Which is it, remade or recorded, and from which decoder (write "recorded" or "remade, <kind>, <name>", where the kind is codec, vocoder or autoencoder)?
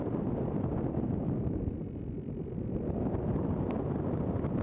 recorded